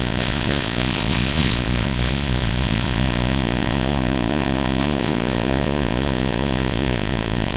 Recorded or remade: remade